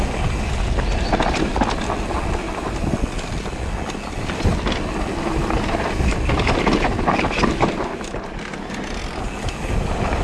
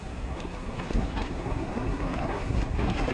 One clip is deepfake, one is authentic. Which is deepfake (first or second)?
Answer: second